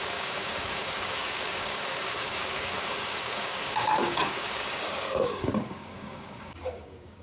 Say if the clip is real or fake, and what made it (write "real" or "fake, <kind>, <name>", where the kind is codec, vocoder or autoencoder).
fake, codec, DAC